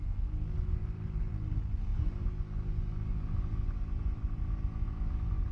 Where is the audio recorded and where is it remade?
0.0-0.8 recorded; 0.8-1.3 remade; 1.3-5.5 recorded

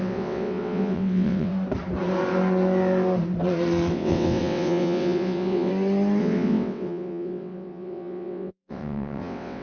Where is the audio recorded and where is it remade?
0.0-1.5 remade; 1.5-3.9 recorded; 3.9-5.7 remade; 5.7-6.2 recorded; 6.2-9.6 remade

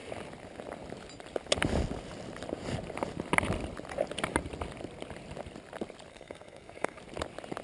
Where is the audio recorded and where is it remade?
0.0-6.1 recorded; 6.1-7.0 remade; 7.0-7.6 recorded

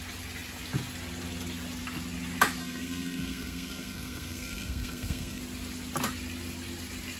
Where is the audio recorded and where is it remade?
0.0-2.6 recorded; 2.6-5.4 remade; 5.4-7.2 recorded

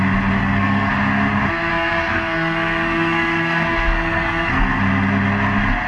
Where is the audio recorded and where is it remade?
0.0-0.4 recorded; 0.4-0.9 remade; 0.9-1.7 recorded; 1.7-4.8 remade; 4.8-5.9 recorded

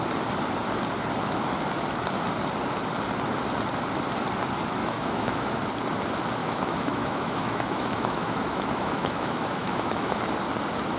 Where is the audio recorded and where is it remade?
0.0-4.8 recorded; 4.8-5.5 remade; 5.5-6.4 recorded; 6.4-10.3 remade; 10.3-11.0 recorded

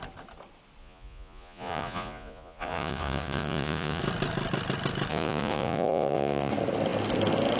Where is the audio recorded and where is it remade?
0.0-0.8 recorded; 0.8-4.0 remade; 4.0-5.1 recorded; 5.1-6.5 remade; 6.5-7.6 recorded